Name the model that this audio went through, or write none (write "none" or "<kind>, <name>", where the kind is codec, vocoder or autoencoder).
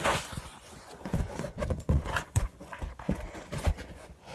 vocoder, Vocos